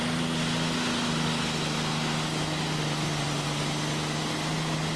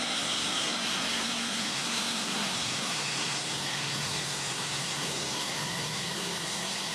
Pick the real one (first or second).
first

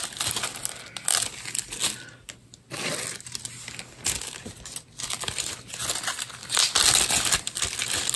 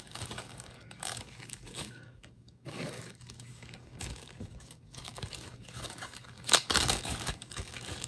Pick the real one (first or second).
first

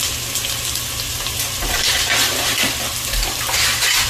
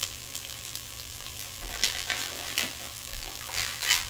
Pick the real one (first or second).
first